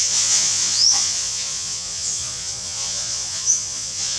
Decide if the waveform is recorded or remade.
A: remade